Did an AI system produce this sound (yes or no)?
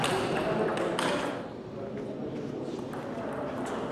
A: no